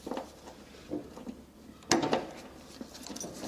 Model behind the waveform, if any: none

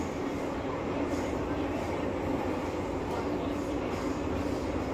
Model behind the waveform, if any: none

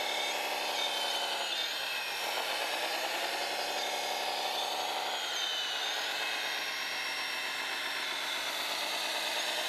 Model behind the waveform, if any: none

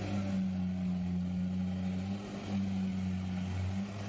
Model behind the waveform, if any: none